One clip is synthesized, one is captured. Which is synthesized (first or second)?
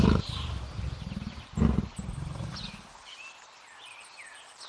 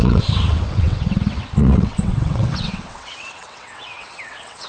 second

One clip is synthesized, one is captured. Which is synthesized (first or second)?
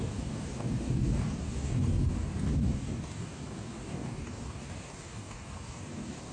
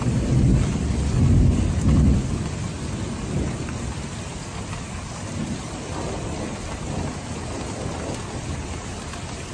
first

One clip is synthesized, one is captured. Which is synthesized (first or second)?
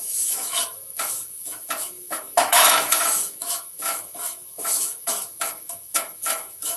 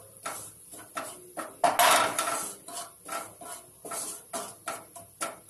first